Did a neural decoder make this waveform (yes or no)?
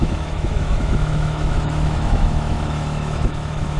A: yes